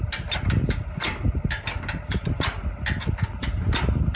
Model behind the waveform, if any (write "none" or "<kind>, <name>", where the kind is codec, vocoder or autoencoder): none